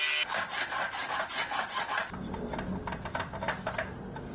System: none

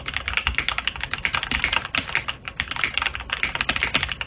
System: none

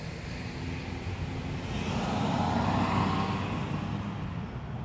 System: none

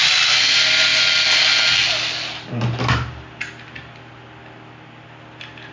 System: none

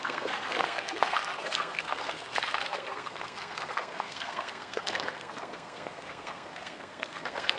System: codec, SNAC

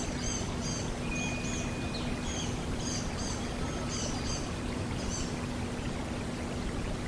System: vocoder, BigVGAN v2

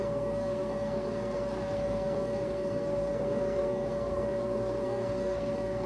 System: codec, SNAC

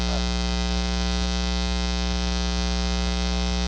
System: autoencoder, DAC-VAE